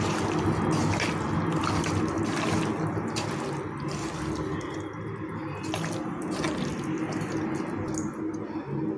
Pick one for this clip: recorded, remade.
recorded